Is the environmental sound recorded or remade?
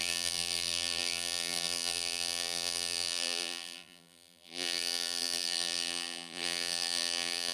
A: remade